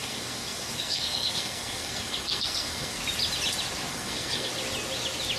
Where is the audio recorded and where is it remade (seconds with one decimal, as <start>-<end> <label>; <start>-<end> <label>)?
0.0-3.0 remade; 3.0-3.9 recorded; 3.9-4.5 remade; 4.5-5.4 recorded